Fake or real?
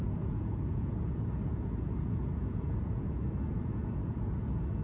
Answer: fake